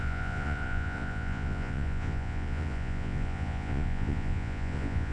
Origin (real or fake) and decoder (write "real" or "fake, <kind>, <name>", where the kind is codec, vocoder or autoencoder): fake, vocoder, Vocos